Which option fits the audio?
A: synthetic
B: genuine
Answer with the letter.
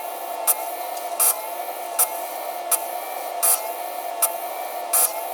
B